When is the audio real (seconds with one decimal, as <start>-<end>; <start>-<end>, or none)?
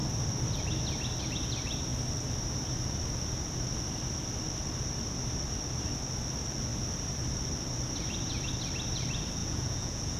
0.0-9.4